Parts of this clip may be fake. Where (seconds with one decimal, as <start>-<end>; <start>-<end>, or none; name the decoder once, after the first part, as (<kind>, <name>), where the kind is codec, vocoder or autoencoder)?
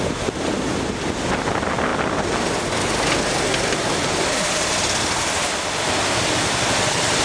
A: none